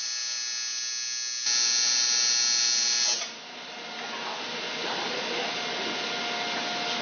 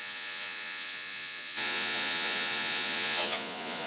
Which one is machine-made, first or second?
second